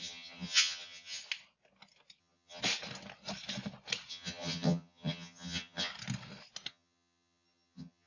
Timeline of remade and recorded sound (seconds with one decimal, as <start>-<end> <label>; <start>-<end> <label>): 0.0-1.2 remade; 1.2-2.2 recorded; 2.2-2.6 remade; 2.6-4.1 recorded; 4.1-5.9 remade; 5.9-6.7 recorded; 6.7-8.1 remade